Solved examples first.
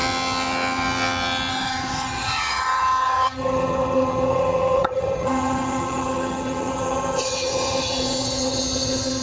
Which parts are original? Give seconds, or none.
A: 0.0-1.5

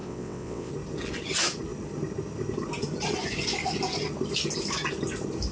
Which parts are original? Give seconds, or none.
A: 0.7-5.5

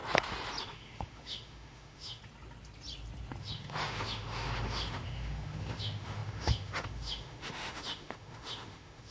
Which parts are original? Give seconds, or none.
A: 0.0-0.6; 2.2-3.4

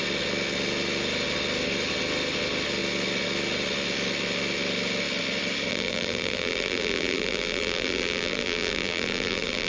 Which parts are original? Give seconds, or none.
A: 0.0-5.7

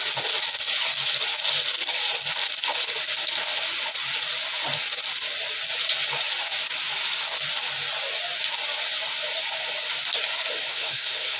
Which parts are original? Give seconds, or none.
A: 0.0-10.7

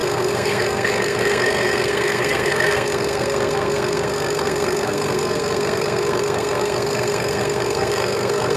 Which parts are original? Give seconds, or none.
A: none